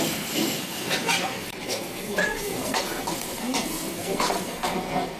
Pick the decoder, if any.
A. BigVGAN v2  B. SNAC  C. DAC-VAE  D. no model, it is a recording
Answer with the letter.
B